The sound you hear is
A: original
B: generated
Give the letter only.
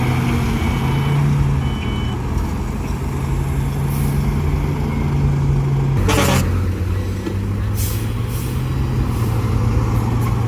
A